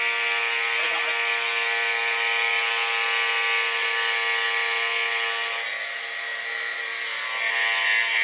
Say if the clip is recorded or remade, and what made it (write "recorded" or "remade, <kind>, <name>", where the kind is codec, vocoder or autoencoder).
recorded